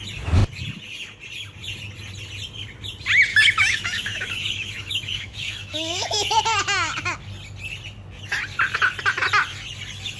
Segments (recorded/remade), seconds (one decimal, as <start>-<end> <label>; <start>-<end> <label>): 0.0-3.3 recorded; 3.3-6.4 remade; 6.4-10.2 recorded